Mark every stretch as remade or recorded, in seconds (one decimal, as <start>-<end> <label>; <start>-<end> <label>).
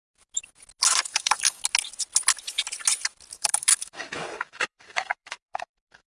0.0-1.1 recorded; 1.1-1.6 remade; 1.6-3.3 recorded; 3.3-6.1 remade